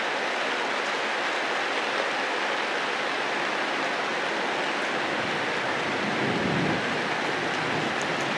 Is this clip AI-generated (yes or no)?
no